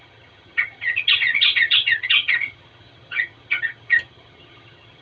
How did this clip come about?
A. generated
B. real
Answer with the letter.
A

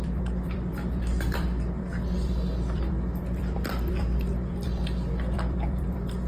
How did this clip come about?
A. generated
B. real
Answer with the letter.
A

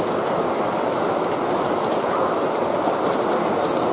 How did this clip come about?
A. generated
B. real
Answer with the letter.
B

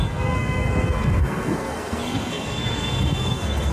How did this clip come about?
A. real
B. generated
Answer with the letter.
B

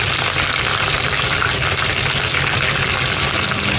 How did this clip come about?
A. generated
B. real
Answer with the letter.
B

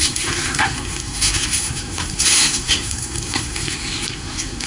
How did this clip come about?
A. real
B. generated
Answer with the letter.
B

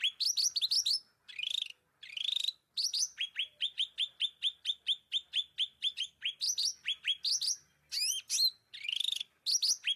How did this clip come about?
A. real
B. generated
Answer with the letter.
A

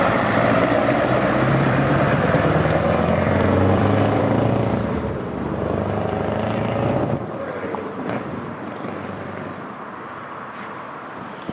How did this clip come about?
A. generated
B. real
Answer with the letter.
A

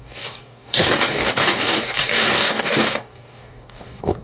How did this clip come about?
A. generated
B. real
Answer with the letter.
A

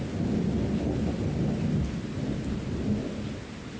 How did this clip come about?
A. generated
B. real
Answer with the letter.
B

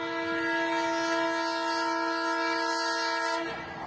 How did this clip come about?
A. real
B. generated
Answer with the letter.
A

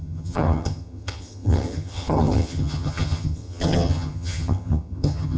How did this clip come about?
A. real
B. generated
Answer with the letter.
B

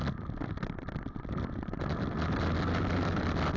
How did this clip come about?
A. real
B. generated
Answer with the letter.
A